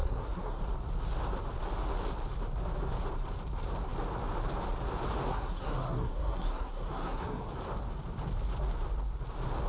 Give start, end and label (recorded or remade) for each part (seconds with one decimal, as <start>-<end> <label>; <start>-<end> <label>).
0.0-0.6 remade; 0.6-5.3 recorded; 5.3-7.5 remade; 7.5-9.7 recorded